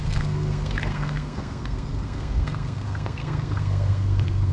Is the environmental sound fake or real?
fake